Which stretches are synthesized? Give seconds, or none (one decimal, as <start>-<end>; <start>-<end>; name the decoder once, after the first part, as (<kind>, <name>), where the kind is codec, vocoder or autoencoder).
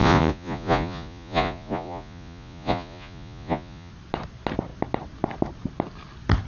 0.0-3.9 (vocoder, Vocos)